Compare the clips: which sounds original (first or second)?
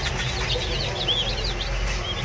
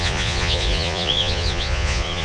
first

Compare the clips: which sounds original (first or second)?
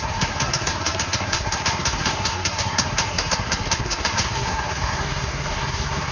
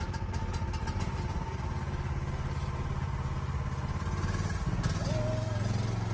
second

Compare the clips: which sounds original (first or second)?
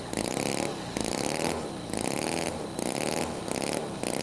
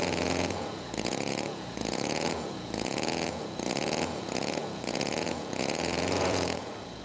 first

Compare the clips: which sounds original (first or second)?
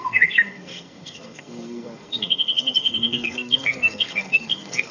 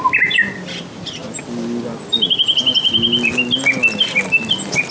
second